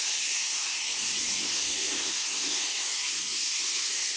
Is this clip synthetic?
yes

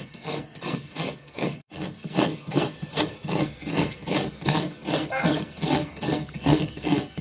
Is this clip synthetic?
yes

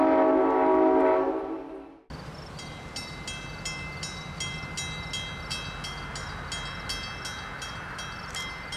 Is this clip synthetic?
no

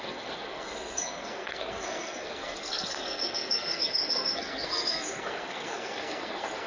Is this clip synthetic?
yes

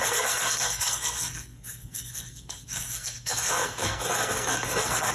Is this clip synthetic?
yes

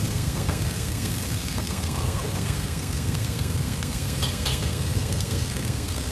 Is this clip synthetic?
yes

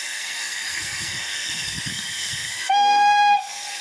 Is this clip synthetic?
yes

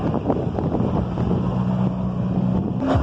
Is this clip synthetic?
no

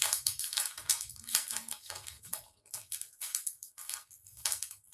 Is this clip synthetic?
yes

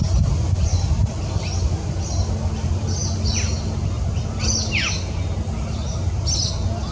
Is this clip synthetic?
no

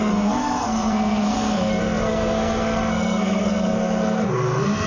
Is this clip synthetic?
yes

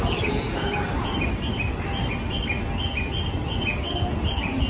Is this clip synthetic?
no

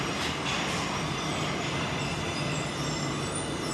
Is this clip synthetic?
no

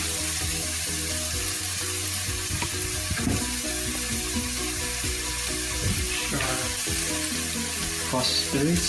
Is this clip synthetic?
no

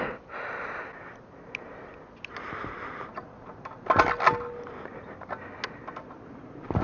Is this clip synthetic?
no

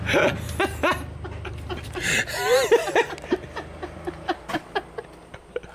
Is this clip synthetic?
no